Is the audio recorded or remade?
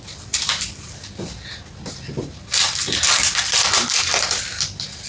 recorded